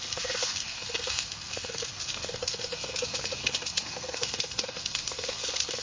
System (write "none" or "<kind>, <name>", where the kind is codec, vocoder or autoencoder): codec, SNAC